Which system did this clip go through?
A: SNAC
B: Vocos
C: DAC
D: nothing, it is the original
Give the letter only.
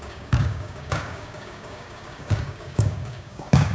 C